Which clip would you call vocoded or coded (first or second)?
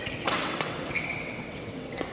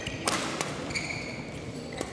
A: first